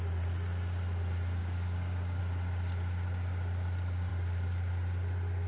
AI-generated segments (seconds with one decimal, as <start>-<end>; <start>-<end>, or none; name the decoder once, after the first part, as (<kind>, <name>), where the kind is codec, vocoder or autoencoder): 1.4-2.2 (codec, DAC)